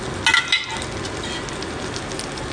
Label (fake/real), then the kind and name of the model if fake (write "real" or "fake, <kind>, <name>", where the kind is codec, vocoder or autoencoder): real